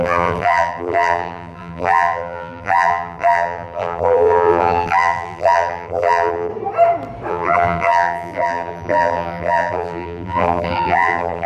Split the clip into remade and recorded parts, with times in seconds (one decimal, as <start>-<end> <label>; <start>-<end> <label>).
0.0-6.5 remade; 6.5-7.3 recorded; 7.3-11.5 remade